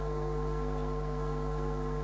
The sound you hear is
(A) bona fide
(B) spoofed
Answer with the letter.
B